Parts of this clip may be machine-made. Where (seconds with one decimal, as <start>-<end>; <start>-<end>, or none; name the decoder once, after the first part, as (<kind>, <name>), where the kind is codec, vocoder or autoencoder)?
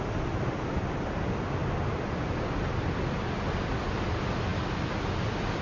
none